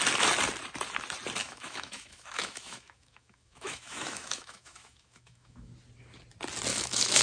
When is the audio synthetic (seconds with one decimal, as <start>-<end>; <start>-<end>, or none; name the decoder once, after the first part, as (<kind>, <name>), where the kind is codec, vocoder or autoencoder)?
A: 1.4-5.7 (autoencoder, DAC-VAE); 6.7-7.2